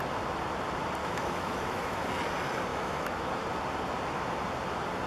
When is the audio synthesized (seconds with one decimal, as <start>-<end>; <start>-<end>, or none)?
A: 1.0-2.1; 2.7-3.3